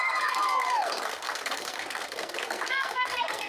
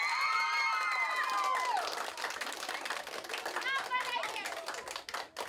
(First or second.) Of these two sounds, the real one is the second